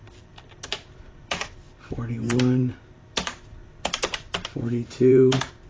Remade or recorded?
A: remade